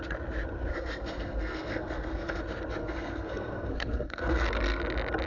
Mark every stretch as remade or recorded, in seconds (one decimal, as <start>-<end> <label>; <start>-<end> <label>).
0.0-0.7 recorded; 0.7-2.4 remade; 2.4-2.8 recorded; 2.8-4.8 remade; 4.8-5.3 recorded

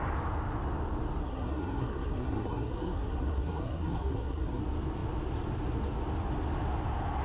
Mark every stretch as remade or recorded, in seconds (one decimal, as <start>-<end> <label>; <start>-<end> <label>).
0.0-1.2 recorded; 1.2-4.6 remade; 4.6-7.2 recorded

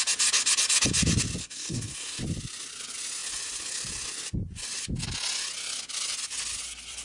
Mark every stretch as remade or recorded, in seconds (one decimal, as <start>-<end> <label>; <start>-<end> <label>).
0.0-1.4 recorded; 1.4-2.2 remade; 2.2-7.0 recorded

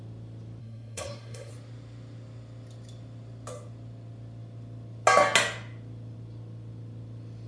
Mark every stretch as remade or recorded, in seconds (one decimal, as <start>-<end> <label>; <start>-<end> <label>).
0.0-0.6 recorded; 0.6-1.5 remade; 1.5-7.5 recorded